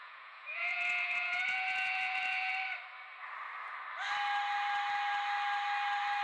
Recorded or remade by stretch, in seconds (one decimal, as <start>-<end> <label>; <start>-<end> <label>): 0.0-2.5 remade; 2.5-6.2 recorded